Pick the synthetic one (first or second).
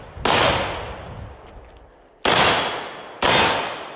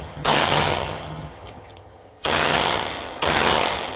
second